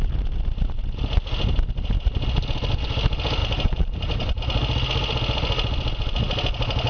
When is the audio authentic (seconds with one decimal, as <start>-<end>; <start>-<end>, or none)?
0.0-3.4; 4.4-6.9